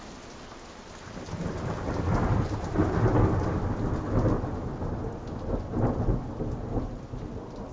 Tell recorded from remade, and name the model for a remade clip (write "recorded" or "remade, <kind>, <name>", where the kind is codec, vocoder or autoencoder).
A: recorded